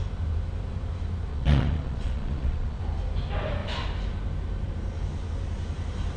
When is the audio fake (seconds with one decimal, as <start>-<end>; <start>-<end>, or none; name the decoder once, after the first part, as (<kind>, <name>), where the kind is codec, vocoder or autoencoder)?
1.3-2.8 (vocoder, Vocos)